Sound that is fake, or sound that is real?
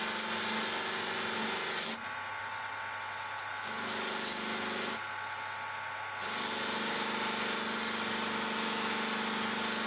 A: real